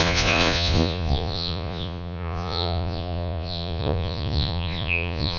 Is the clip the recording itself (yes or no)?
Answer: no